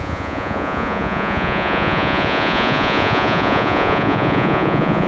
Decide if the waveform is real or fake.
fake